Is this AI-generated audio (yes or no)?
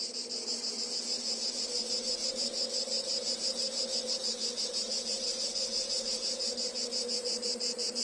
no